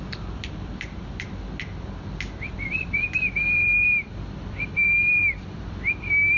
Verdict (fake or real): fake